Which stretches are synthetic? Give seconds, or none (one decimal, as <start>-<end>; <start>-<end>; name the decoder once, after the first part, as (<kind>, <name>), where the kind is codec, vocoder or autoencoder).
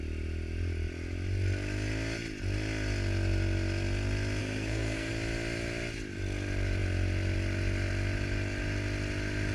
4.4-5.1 (codec, SNAC)